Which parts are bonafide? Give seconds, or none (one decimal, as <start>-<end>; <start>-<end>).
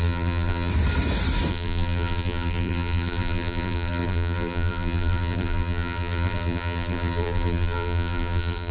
0.7-1.5